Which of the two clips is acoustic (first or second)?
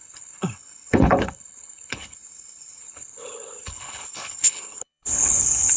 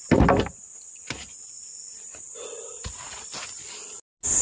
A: second